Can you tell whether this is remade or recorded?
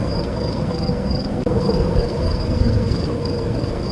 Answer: remade